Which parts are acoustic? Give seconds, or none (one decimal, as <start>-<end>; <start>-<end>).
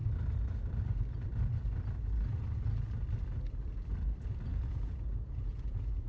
0.0-4.5